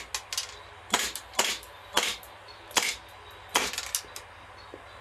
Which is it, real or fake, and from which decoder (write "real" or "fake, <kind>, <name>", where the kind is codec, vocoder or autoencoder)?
real